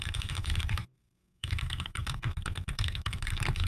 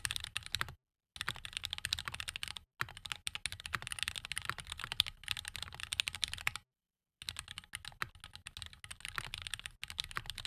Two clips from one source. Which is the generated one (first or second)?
first